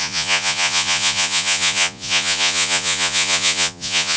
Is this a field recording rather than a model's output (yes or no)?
no